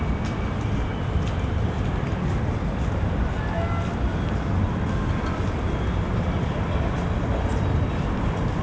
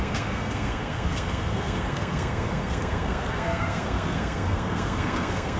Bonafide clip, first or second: first